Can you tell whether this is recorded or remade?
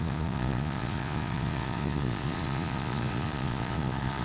remade